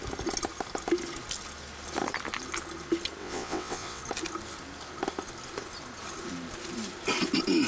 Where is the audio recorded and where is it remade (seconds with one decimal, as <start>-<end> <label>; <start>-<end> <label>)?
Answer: 0.0-3.2 recorded; 3.2-4.0 remade; 4.0-7.7 recorded